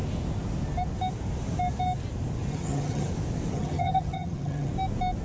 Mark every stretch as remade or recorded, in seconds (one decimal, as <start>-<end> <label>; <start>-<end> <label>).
0.0-2.5 recorded; 2.5-3.1 remade; 3.1-3.5 recorded; 3.5-4.7 remade; 4.7-5.2 recorded